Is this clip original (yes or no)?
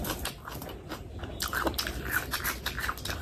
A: no